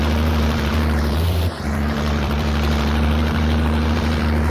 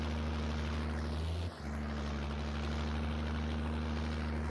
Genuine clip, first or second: second